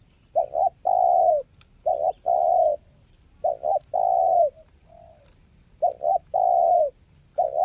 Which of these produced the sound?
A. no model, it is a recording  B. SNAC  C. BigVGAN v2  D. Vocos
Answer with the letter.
A